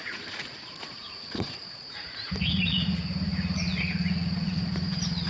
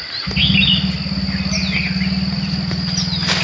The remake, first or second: first